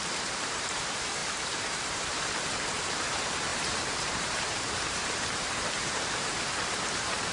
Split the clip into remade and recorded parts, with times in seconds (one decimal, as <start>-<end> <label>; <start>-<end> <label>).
0.0-7.3 remade